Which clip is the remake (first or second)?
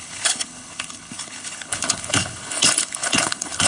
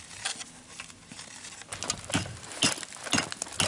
first